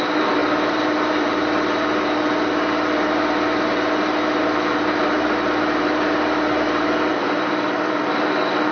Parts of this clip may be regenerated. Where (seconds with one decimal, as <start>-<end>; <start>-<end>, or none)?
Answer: 0.4-4.4; 7.1-8.0

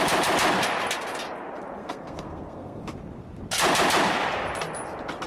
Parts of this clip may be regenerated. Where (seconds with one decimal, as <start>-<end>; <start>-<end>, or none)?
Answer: 1.8-2.8

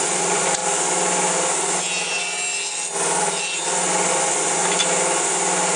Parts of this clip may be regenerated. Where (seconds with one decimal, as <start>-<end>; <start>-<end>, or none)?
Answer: 0.0-0.6; 4.1-4.6

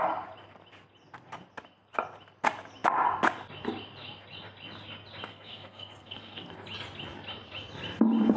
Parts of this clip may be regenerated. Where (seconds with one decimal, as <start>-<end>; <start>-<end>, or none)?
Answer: 5.3-6.5